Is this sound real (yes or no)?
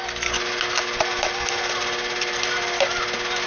yes